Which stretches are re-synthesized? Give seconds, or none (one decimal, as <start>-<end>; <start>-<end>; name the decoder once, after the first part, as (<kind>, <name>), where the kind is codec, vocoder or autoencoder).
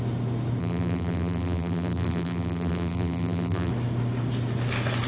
0.6-3.7 (vocoder, BigVGAN v2)